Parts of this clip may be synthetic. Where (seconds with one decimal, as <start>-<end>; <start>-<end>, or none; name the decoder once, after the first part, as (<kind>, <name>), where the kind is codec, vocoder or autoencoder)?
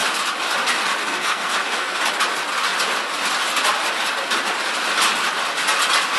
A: 1.0-2.0 (codec, SNAC)